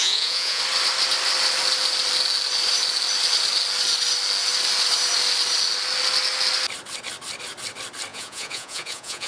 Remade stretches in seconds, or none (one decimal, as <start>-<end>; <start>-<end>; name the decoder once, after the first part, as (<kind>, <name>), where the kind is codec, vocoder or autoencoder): 0.0-0.6 (vocoder, Vocos); 8.1-9.3